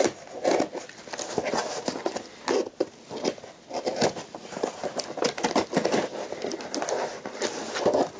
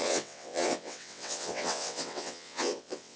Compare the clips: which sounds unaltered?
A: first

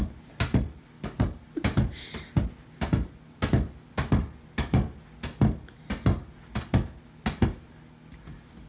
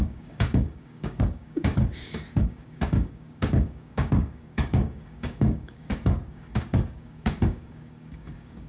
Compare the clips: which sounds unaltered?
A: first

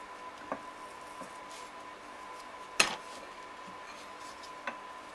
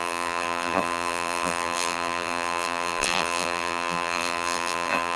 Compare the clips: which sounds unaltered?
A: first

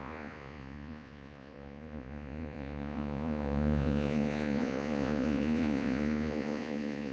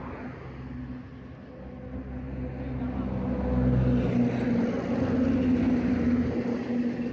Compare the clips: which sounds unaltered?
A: second